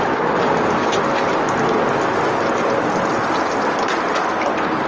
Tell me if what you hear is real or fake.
real